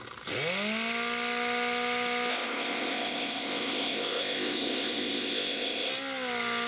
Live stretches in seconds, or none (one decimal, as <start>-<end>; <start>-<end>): 0.0-2.3; 5.9-6.7